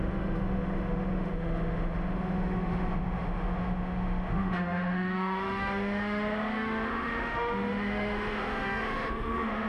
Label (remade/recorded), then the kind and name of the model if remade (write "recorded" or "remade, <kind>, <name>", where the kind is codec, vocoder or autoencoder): remade, autoencoder, DAC-VAE